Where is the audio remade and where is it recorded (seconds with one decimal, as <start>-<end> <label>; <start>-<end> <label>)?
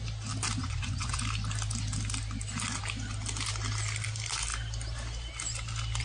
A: 0.0-0.6 recorded; 0.6-1.2 remade; 1.2-6.0 recorded